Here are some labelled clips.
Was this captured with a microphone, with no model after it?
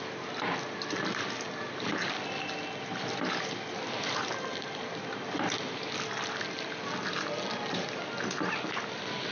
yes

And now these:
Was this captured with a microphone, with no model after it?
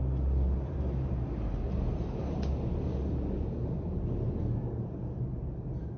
yes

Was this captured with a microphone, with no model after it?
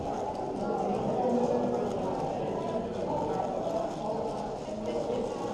yes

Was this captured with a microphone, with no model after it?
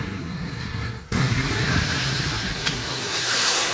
no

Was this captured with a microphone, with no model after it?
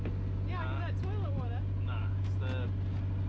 yes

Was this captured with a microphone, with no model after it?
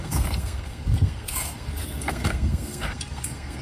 no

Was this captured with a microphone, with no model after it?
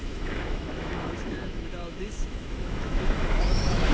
no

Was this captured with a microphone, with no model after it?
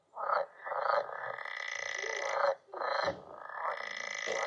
yes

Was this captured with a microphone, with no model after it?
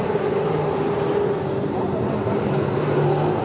yes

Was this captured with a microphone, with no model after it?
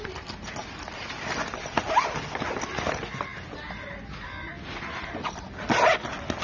yes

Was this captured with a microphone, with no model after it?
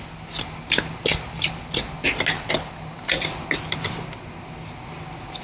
yes